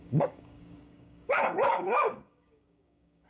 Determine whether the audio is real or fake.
fake